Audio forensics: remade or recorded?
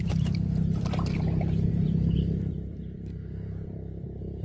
remade